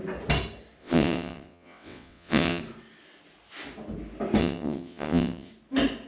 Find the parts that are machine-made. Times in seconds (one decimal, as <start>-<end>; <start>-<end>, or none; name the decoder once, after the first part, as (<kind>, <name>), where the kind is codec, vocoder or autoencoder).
0.8-2.6 (vocoder, WaveNeXt); 4.4-5.5